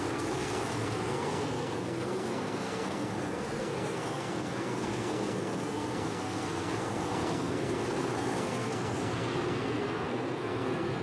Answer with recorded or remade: remade